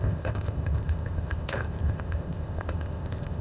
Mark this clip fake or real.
fake